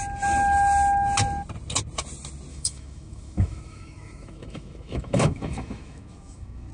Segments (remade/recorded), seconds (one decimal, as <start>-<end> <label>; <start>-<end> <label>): 0.0-2.5 recorded; 2.5-6.7 remade